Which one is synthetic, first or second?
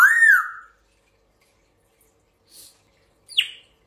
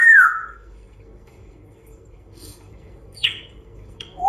second